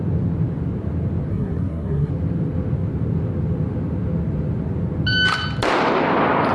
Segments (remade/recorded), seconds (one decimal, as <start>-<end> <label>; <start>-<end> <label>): 0.0-1.3 recorded; 1.3-2.1 remade; 2.1-6.5 recorded